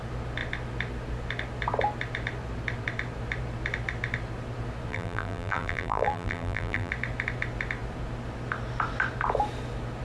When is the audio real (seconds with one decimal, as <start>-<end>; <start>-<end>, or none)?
0.0-4.9; 6.9-10.0